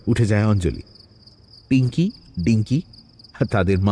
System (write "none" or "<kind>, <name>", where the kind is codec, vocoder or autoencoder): none